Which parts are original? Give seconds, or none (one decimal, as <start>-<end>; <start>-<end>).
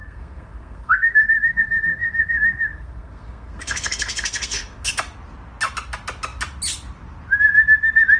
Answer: 4.9-8.2